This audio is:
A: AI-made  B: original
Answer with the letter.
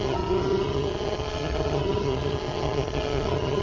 A